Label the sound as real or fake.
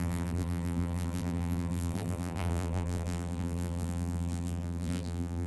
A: fake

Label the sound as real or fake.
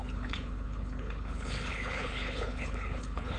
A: fake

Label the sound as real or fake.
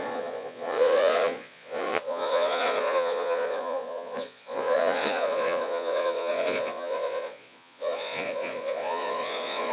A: fake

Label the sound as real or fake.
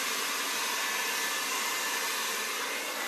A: real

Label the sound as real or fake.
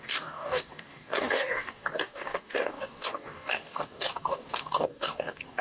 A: fake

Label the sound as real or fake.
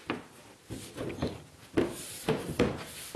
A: fake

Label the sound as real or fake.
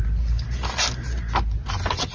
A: real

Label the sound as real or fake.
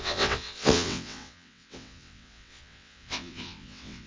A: fake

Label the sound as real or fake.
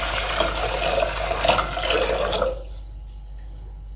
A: real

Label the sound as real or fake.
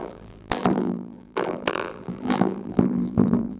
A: fake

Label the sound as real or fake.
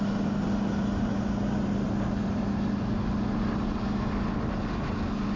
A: real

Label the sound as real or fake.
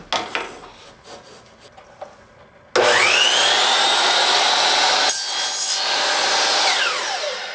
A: real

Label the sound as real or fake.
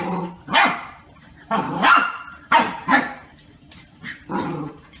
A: fake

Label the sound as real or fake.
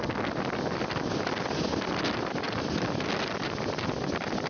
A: real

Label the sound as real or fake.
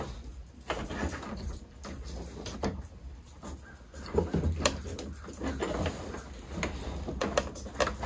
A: real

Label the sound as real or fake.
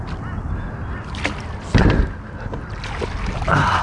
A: real